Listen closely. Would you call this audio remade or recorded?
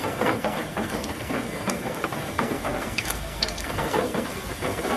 remade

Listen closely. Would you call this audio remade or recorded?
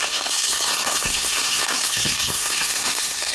remade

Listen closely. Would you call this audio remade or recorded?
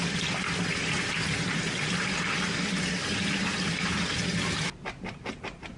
recorded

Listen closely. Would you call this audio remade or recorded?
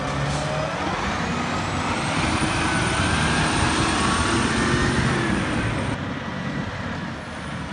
recorded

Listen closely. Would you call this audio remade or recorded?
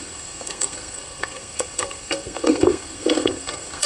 remade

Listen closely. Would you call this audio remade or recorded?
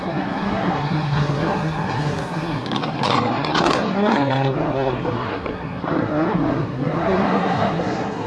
remade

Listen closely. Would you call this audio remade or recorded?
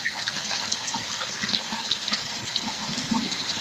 remade